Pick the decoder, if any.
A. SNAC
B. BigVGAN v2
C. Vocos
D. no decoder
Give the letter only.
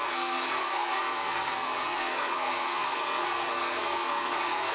A